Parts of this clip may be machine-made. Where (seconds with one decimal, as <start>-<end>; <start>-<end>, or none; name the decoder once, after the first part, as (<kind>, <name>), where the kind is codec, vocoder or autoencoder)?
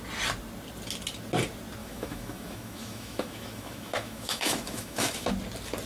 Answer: 1.8-5.3 (autoencoder, DAC-VAE)